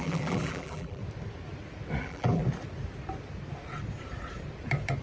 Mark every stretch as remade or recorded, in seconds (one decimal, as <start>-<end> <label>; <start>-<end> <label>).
0.0-1.0 remade; 1.0-2.0 recorded; 2.0-2.4 remade; 2.4-5.0 recorded